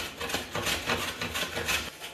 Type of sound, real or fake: real